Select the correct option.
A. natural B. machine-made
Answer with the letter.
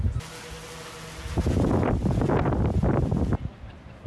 A